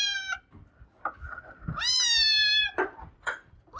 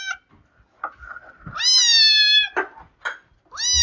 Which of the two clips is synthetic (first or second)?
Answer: first